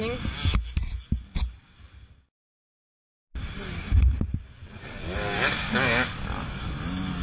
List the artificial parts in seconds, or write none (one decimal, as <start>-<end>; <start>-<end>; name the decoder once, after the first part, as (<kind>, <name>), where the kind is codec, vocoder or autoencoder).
none